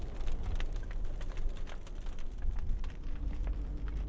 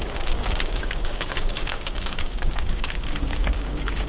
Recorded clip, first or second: first